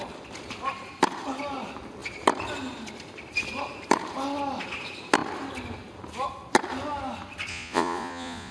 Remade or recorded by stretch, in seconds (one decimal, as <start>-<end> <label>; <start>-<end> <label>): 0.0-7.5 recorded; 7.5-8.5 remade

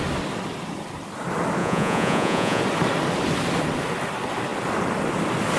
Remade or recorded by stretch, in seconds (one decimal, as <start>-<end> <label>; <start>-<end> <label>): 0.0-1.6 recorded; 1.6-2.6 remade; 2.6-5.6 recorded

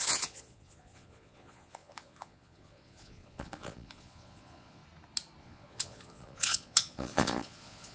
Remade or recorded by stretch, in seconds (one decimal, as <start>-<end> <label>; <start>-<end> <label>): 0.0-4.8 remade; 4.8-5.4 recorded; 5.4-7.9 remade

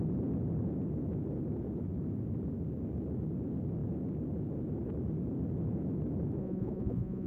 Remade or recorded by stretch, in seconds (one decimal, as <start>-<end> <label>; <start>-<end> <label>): 0.0-6.4 recorded; 6.4-7.3 remade

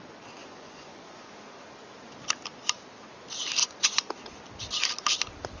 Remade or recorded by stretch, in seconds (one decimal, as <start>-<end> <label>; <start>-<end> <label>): 0.0-0.4 recorded; 0.4-1.3 remade; 1.3-3.6 recorded; 3.6-4.4 remade; 4.4-5.6 recorded

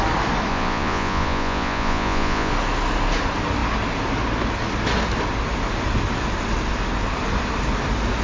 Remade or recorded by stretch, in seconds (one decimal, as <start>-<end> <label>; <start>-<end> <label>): 0.0-0.5 recorded; 0.5-2.5 remade; 2.5-8.2 recorded